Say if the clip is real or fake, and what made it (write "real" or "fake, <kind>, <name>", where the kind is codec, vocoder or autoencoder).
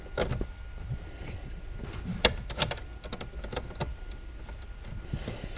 real